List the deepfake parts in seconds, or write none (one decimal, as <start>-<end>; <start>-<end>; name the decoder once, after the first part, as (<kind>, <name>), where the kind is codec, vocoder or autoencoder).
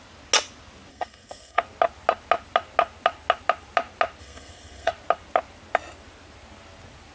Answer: 0.9-1.6 (codec, SNAC); 4.2-4.9